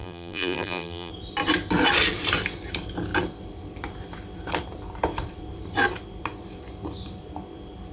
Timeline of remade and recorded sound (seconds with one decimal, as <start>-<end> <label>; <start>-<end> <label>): 0.0-1.1 remade; 1.1-7.9 recorded